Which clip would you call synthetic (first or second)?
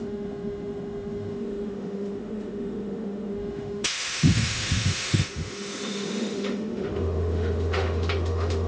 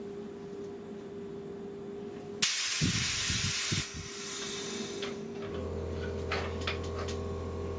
first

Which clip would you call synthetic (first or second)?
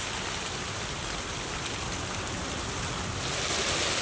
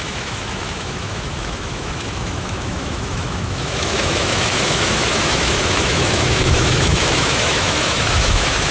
second